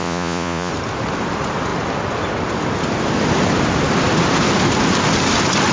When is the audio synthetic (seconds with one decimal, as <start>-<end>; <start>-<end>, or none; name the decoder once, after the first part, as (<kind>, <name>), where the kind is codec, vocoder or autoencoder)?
0.0-0.7 (vocoder, Vocos)